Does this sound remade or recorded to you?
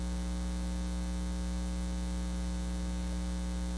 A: recorded